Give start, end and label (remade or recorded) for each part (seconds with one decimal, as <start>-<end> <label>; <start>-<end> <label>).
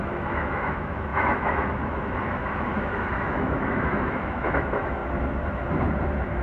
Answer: 0.0-5.0 remade; 5.0-6.4 recorded